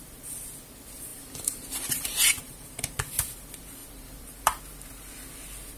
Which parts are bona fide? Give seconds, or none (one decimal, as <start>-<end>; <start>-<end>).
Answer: 0.0-1.1; 3.1-3.8; 4.6-5.8